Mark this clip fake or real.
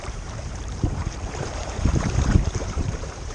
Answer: fake